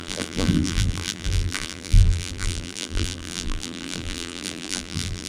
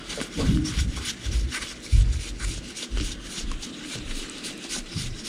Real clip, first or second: second